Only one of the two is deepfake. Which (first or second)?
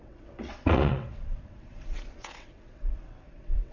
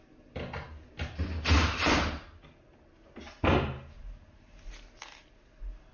first